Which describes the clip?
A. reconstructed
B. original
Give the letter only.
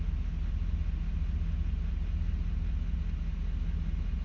B